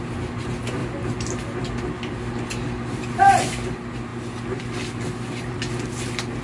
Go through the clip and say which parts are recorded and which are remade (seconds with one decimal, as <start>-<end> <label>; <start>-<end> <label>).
0.0-6.4 recorded